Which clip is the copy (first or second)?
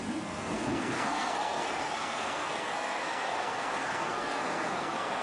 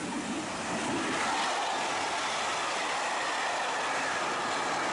first